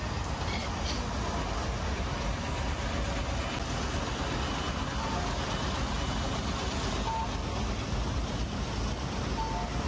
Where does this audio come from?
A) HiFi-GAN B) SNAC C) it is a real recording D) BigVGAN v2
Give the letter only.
C